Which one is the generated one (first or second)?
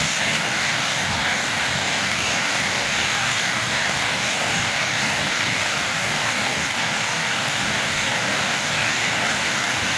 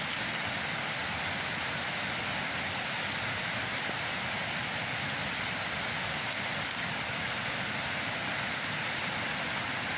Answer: first